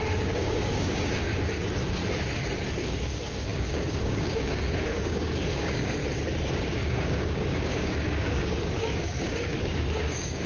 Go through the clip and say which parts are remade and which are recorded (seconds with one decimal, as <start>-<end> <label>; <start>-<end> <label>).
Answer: 0.0-1.2 remade; 1.2-2.8 recorded; 2.8-6.0 remade; 6.0-6.5 recorded; 6.5-10.5 remade